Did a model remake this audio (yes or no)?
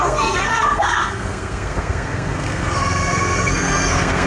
yes